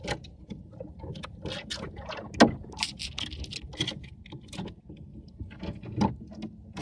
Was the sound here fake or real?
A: real